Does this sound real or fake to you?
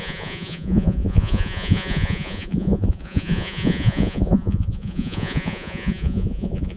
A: fake